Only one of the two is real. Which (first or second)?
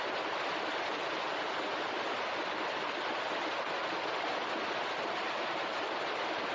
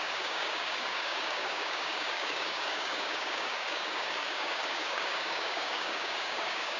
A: first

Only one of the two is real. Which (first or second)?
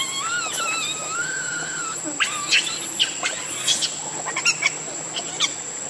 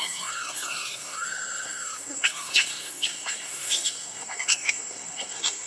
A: first